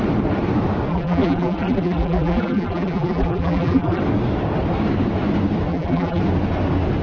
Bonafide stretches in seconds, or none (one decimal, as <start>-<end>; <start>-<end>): 0.0-0.9; 4.0-5.7; 6.2-7.0